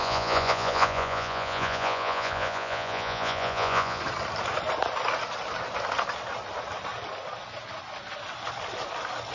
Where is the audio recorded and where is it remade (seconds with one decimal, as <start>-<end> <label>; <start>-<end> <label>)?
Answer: 0.0-4.0 remade; 4.0-9.3 recorded